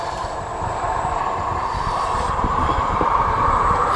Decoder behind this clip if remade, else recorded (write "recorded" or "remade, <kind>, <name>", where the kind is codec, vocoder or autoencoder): remade, vocoder, BigVGAN v2